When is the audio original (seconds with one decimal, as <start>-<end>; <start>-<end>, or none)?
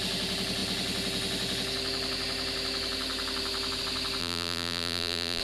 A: 0.0-4.2